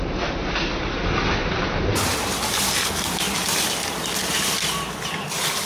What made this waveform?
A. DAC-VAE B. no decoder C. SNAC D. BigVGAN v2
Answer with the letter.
B